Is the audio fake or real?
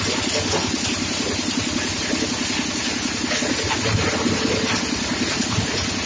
real